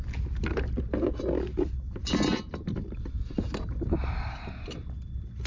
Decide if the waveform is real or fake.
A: real